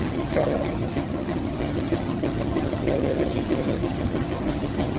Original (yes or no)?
no